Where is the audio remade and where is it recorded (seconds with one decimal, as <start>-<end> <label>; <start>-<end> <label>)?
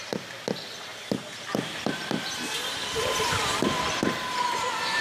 0.0-5.0 recorded